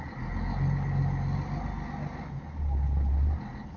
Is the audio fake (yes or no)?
no